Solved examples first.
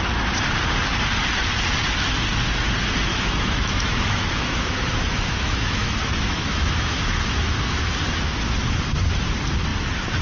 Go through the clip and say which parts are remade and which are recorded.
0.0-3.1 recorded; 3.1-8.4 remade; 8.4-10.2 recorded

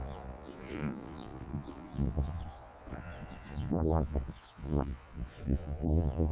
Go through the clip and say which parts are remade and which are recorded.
0.0-6.3 remade

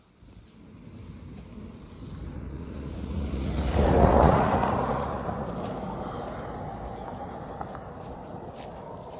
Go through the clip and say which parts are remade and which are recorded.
0.0-2.3 recorded; 2.3-5.5 remade; 5.5-9.2 recorded

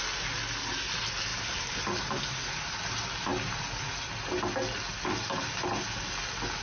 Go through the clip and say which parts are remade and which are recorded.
0.0-1.3 recorded; 1.3-2.2 remade; 2.2-3.3 recorded; 3.3-3.9 remade; 3.9-6.6 recorded

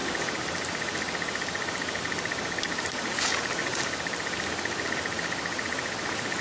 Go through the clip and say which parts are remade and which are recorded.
0.0-6.4 recorded

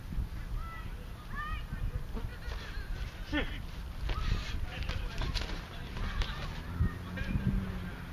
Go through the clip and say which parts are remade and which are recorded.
0.0-8.1 recorded

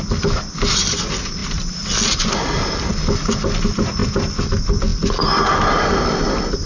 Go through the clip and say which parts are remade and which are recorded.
0.0-6.7 recorded